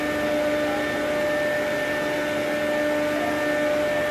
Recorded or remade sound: recorded